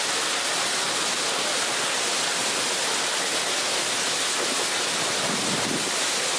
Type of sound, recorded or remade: recorded